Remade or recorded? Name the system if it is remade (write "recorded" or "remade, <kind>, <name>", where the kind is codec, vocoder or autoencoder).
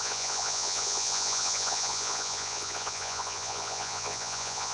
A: remade, vocoder, Vocos